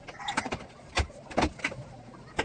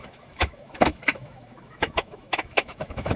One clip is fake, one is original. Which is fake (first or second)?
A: second